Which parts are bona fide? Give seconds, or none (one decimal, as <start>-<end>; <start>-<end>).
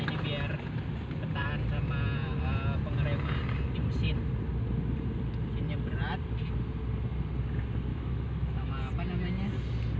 0.0-7.9; 8.7-10.0